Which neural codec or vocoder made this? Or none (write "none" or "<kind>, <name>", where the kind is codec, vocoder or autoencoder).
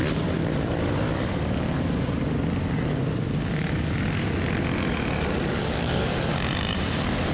none